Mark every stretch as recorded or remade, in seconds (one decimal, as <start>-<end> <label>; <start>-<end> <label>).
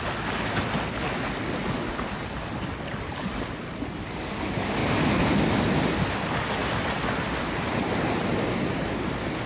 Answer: 0.0-9.5 recorded